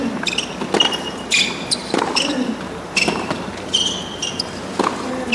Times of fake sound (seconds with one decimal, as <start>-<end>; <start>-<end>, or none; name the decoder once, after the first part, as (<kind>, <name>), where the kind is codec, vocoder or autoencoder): 1.8-2.9 (vocoder, BigVGAN v2)